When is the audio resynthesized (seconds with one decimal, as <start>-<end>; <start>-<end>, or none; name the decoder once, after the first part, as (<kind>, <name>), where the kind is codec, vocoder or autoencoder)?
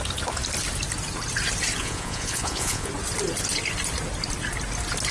1.8-2.9 (vocoder, Vocos)